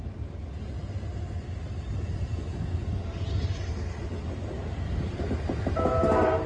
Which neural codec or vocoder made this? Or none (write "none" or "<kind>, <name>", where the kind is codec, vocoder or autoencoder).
none